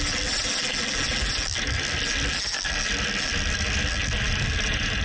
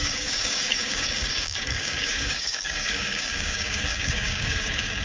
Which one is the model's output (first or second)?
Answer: second